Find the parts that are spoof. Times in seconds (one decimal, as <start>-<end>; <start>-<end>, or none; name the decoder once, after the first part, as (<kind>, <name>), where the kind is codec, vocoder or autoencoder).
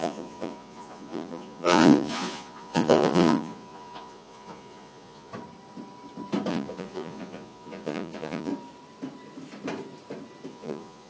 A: 0.0-5.3 (vocoder, Vocos); 6.5-8.5; 10.5-11.1